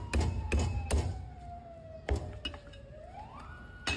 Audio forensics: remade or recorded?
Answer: recorded